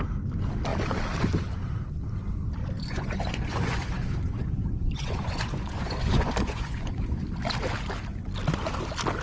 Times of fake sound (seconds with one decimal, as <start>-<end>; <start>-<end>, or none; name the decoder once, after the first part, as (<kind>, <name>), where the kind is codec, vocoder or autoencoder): 2.6-7.2 (vocoder, Vocos)